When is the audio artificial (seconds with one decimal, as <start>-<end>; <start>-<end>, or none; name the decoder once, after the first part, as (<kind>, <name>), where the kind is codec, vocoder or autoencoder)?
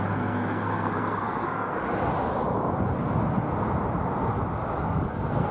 0.0-1.8 (codec, SNAC); 5.1-5.5